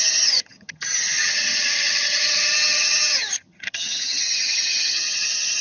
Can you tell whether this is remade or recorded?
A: remade